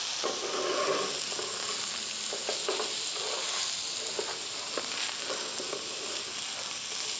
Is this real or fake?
real